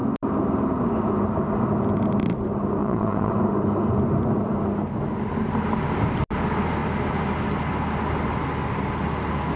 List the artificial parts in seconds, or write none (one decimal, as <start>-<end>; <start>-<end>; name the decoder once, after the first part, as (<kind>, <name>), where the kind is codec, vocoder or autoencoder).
2.8-3.3 (vocoder, WaveNeXt)